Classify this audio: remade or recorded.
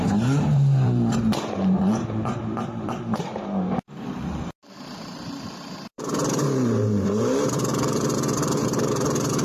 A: remade